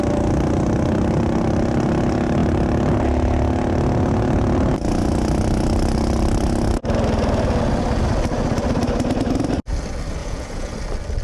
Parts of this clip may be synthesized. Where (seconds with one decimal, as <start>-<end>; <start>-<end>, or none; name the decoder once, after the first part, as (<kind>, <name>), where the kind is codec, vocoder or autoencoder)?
10.2-10.7 (vocoder, Vocos)